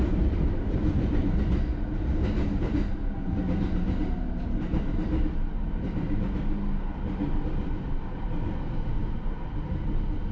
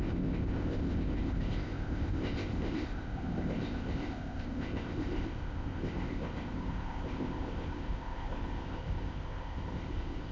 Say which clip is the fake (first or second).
second